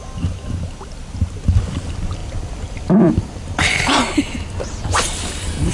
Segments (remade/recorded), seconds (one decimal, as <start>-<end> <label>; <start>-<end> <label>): 0.0-2.2 recorded; 2.2-3.7 remade; 3.7-5.7 recorded